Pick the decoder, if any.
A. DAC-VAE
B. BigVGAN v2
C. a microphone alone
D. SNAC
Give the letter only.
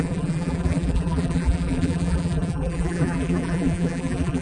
B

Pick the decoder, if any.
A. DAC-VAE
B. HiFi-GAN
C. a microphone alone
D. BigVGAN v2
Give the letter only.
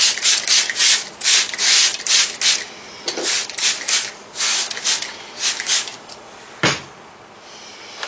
C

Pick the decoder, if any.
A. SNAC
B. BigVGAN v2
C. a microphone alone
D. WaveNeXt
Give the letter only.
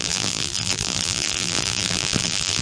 B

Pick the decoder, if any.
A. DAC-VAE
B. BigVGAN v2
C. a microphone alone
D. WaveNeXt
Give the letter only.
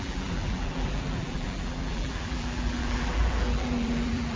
B